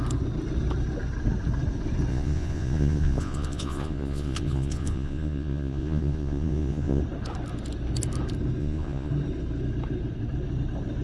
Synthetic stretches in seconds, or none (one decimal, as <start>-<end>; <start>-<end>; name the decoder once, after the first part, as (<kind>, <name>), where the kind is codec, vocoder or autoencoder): 2.1-7.0 (vocoder, Vocos); 8.6-9.1